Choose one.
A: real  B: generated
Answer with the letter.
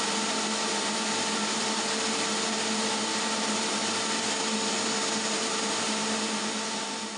A